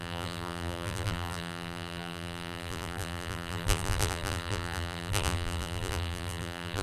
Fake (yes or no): yes